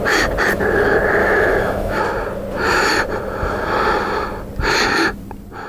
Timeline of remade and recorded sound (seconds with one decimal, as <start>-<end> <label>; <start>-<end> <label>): 0.0-1.2 recorded; 1.2-2.0 remade; 2.0-5.7 recorded